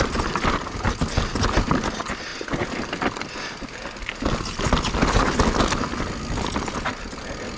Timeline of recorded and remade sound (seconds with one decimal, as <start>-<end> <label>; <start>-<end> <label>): 0.0-7.6 recorded